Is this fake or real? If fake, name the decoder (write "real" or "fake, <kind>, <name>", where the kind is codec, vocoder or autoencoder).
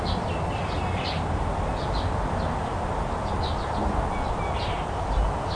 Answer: real